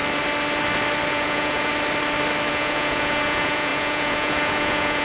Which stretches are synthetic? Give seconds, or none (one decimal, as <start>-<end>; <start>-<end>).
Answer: 1.1-1.7; 2.5-5.0